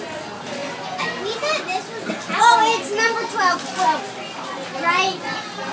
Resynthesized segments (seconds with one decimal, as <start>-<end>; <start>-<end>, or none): none